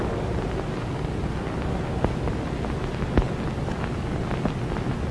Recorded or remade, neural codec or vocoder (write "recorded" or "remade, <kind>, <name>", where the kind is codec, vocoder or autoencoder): recorded